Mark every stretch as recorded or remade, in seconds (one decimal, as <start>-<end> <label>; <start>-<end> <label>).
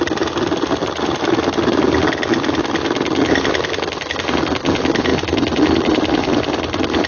0.0-7.1 recorded